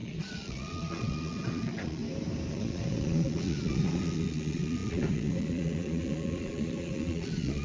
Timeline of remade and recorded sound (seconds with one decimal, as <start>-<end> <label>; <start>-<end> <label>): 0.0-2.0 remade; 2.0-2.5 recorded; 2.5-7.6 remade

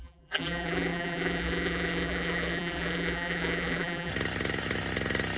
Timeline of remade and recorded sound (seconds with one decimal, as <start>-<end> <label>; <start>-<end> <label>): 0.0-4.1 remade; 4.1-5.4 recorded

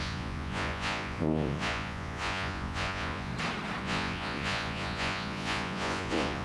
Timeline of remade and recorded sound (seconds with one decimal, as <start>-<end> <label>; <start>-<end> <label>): 0.0-3.3 remade; 3.3-3.8 recorded; 3.8-6.4 remade